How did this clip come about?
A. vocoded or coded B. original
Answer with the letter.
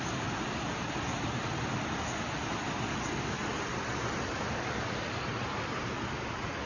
B